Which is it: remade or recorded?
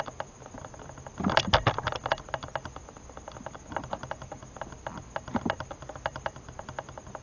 recorded